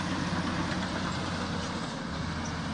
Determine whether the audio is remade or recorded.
recorded